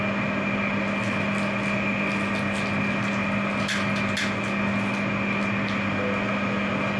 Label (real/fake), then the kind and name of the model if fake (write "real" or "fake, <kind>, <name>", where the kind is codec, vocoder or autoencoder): real